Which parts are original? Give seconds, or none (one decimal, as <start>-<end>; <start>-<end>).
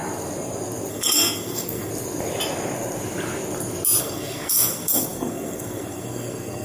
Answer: 0.0-0.9; 1.9-4.0